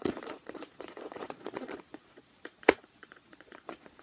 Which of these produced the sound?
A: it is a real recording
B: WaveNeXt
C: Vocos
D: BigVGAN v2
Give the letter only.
C